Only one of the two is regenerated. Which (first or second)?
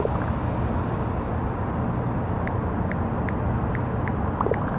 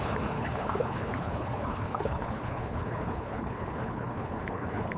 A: second